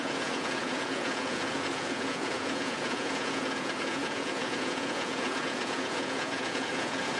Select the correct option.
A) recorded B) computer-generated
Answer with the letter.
B